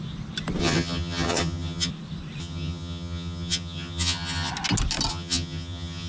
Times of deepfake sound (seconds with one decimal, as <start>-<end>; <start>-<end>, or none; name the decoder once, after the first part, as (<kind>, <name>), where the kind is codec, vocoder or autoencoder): 0.6-1.9 (vocoder, HiFi-GAN); 2.4-4.5; 5.1-6.1